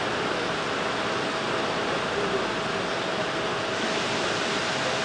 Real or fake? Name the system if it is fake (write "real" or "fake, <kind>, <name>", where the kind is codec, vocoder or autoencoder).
real